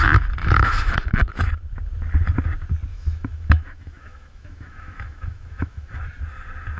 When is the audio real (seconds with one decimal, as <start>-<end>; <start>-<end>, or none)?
0.0-0.4; 1.3-2.9; 6.0-6.8